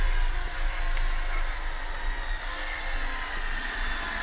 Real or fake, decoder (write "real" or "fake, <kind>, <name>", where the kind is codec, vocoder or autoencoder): real